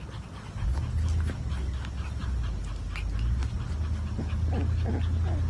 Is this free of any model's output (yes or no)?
yes